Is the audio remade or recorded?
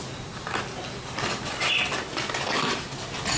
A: recorded